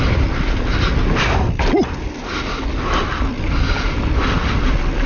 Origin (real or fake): real